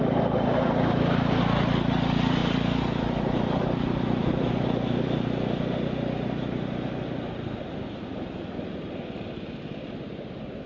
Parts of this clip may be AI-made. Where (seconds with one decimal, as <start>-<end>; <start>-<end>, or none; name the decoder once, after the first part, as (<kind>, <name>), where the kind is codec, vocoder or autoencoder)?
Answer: none